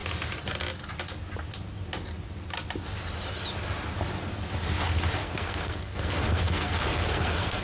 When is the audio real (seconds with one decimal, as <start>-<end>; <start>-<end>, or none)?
0.0-5.2